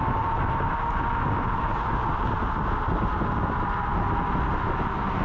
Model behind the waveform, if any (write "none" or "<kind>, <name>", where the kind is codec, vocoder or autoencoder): none